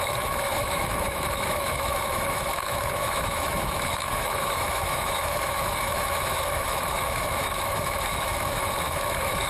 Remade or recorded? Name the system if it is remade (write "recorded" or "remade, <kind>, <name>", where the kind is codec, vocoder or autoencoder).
remade, autoencoder, DAC-VAE